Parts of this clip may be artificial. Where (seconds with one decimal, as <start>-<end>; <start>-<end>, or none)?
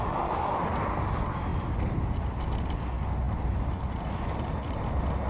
1.5-2.2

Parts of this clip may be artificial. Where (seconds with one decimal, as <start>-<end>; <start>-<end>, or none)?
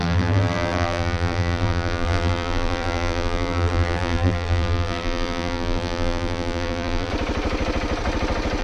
0.0-7.1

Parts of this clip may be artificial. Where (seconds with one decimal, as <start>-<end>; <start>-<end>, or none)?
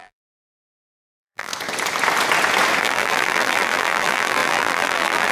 0.0-1.5; 2.8-5.3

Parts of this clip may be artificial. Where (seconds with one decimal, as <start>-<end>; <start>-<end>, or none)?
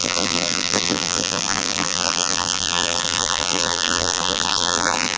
0.0-5.2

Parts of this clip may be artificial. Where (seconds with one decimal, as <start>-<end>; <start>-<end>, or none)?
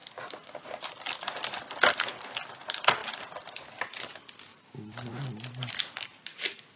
3.0-3.8; 4.5-5.1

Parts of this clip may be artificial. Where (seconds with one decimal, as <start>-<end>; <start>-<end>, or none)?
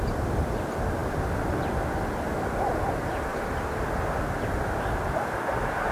none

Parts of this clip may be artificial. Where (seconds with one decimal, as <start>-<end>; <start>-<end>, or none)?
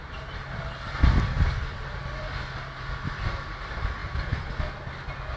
none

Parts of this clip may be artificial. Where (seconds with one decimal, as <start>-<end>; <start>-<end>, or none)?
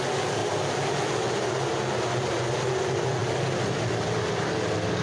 none